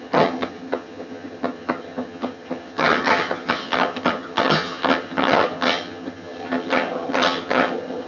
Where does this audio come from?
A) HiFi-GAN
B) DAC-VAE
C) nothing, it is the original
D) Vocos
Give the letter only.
A